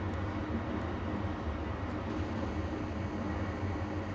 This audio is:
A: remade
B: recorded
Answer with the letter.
B